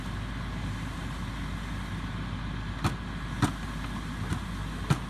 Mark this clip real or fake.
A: real